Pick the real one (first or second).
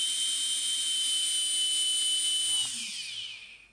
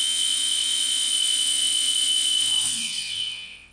first